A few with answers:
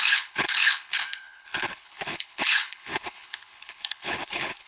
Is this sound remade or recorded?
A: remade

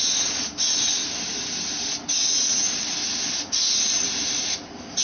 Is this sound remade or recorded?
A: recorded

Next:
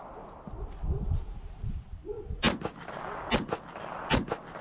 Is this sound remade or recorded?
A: recorded